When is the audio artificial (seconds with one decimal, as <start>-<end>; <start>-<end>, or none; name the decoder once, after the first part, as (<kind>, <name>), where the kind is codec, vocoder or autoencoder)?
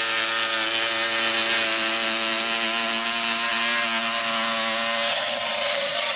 5.1-6.2 (vocoder, HiFi-GAN)